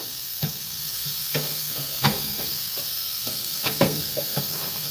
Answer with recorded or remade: remade